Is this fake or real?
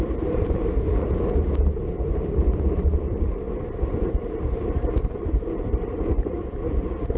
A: fake